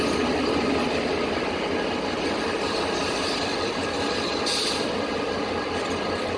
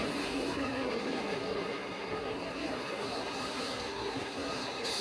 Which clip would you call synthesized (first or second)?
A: second